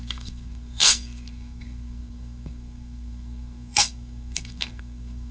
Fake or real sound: fake